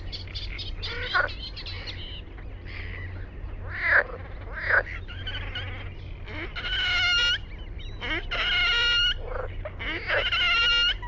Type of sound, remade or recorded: recorded